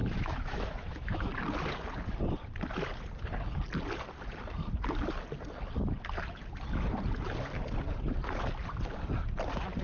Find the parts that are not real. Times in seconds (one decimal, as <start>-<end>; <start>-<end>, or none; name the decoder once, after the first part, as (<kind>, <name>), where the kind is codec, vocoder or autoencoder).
0.0-1.3 (autoencoder, DAC-VAE)